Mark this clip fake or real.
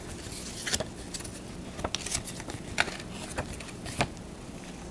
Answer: real